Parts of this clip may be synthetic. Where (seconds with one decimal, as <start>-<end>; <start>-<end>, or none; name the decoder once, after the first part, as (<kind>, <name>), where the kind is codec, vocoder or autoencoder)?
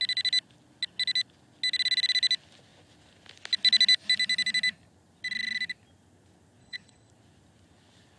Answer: 6.6-7.1 (vocoder, WaveNeXt)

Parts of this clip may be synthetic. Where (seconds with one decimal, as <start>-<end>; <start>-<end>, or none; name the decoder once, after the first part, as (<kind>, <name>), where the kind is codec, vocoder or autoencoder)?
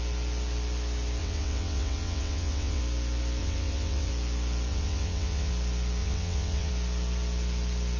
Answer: 1.2-2.8 (vocoder, WaveNeXt); 3.4-4.1; 4.7-5.5; 6.0-6.7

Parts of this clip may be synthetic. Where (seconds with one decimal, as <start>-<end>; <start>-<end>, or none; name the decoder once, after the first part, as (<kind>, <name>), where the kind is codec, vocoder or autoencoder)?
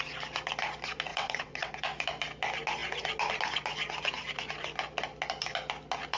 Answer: 1.1-1.7 (vocoder, WaveNeXt)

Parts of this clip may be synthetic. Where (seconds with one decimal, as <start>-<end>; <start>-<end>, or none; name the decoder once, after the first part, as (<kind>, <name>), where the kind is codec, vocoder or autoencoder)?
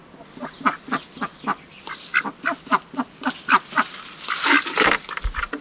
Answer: none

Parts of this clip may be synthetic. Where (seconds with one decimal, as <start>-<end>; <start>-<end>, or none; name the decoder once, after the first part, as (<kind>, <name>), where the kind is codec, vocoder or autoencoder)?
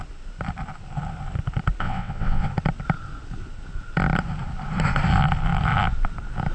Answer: 1.8-2.5 (vocoder, WaveNeXt)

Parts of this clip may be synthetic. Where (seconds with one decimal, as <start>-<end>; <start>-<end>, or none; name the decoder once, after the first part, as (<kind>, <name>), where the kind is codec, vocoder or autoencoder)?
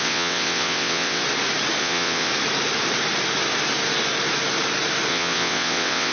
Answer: 0.0-1.2 (vocoder, WaveNeXt); 1.8-2.3; 5.1-6.1